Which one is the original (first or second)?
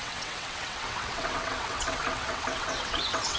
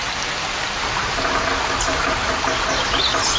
second